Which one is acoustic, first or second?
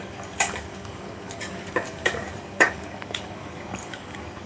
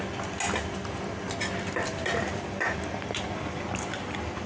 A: second